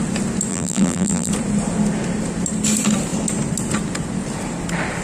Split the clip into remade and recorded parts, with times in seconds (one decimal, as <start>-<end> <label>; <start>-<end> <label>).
0.0-0.5 recorded; 0.5-1.3 remade; 1.3-5.0 recorded